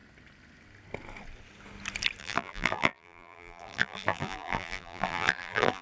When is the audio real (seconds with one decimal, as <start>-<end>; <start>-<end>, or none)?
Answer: 0.0-2.2